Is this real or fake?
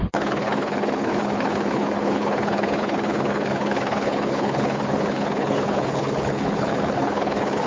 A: fake